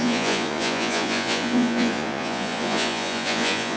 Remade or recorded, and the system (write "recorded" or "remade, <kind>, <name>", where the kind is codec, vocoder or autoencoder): remade, vocoder, Vocos